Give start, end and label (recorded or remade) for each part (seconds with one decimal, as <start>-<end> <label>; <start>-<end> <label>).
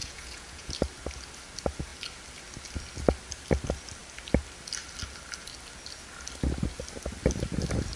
0.0-0.7 remade; 0.7-8.0 recorded